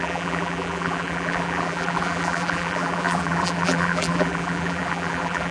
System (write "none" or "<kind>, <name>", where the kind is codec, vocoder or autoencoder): vocoder, BigVGAN v2